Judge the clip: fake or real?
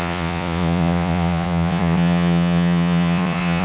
fake